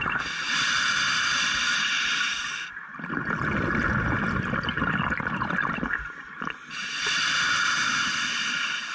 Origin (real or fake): real